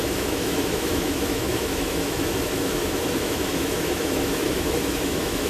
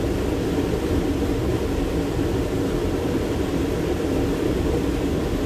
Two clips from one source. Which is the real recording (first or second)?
second